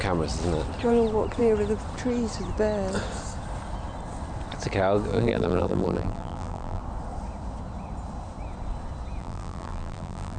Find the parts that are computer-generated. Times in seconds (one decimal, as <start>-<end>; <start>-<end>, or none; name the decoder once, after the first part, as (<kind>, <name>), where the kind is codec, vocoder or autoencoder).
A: 5.1-6.8 (vocoder, BigVGAN v2); 9.2-10.4